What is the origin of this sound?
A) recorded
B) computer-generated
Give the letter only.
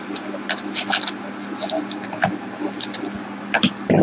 A